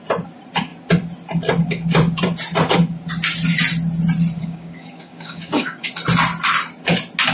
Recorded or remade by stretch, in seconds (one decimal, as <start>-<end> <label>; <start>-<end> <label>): 0.0-4.4 recorded; 4.4-5.9 remade; 5.9-7.3 recorded